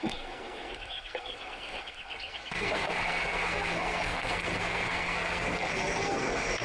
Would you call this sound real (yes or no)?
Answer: no